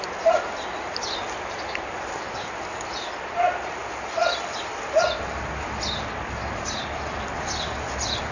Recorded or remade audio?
recorded